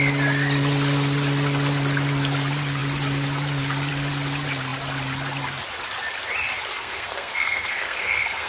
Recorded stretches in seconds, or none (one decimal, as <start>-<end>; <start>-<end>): 0.0-6.8